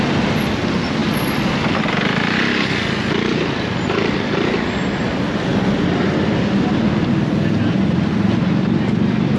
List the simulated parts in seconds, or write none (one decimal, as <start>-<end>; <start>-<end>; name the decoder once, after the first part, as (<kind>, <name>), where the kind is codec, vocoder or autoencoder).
none